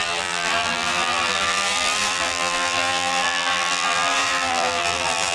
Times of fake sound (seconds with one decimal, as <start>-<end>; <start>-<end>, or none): 0.0-5.3